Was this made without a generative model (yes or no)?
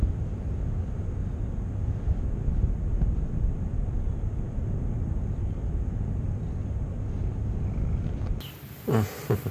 yes